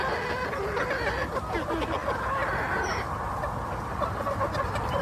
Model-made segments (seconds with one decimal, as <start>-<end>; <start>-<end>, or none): none